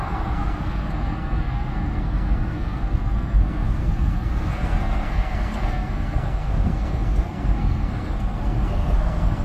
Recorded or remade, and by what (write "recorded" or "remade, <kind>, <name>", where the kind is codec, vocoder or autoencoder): remade, codec, SNAC